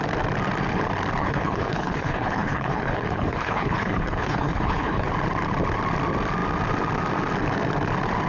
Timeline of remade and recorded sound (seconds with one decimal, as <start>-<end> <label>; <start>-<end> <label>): 0.0-1.2 recorded; 1.2-5.1 remade; 5.1-8.3 recorded